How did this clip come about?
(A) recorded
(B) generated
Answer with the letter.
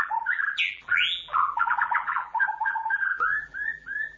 B